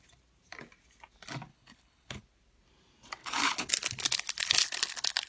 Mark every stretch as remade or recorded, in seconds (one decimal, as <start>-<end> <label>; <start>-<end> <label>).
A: 0.0-1.5 recorded; 1.5-2.2 remade; 2.2-3.2 recorded; 3.2-3.7 remade; 3.7-5.3 recorded